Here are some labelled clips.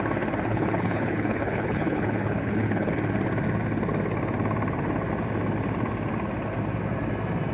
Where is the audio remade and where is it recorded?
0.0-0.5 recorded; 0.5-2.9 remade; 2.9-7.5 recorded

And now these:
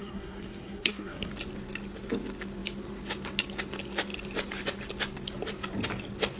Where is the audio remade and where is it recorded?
0.0-1.3 remade; 1.3-6.4 recorded